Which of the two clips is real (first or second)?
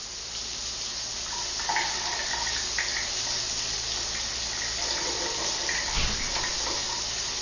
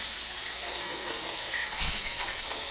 first